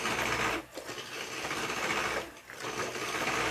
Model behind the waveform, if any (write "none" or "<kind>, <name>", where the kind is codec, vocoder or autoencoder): none